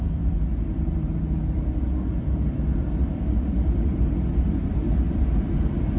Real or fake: fake